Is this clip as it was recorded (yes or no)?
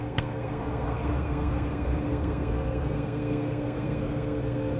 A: no